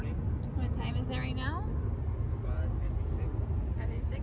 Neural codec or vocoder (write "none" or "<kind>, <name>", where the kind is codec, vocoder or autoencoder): none